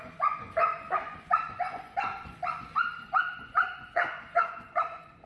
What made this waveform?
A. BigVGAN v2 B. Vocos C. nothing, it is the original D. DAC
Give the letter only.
B